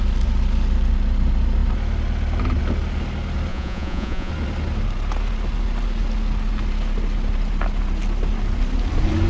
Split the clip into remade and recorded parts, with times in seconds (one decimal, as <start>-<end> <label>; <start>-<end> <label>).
0.0-3.5 recorded; 3.5-4.3 remade; 4.3-9.3 recorded